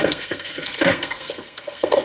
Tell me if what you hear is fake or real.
fake